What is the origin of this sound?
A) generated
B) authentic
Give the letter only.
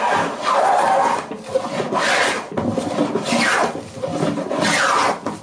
B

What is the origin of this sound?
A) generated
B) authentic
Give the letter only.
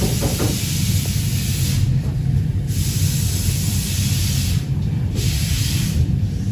B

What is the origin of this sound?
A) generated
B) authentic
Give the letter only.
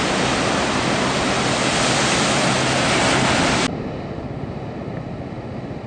B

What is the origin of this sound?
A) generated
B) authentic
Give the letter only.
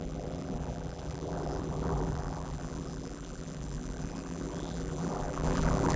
A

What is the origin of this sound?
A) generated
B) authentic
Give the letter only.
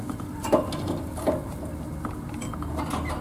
B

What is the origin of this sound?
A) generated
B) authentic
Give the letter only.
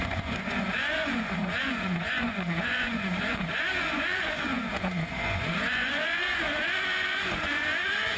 A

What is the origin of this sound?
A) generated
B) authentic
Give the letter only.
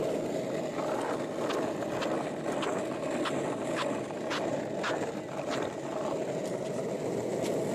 B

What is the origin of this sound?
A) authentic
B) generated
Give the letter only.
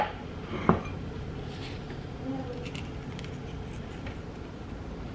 A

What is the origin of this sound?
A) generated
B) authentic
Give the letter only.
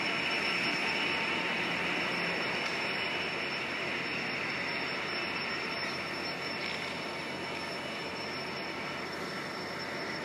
B